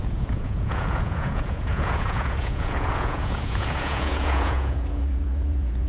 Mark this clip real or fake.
fake